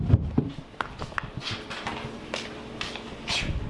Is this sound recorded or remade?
recorded